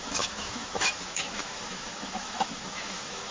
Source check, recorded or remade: remade